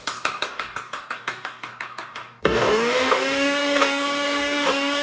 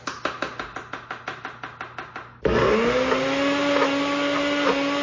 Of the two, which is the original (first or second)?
second